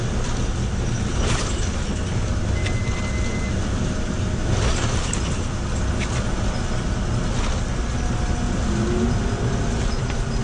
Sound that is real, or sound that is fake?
real